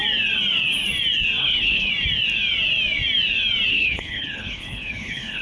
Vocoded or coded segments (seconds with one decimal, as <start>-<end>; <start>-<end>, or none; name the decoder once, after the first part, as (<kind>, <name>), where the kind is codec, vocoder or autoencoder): 1.4-1.9 (codec, HILCodec); 3.7-5.4